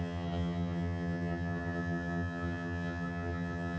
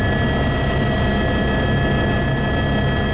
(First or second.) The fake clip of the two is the first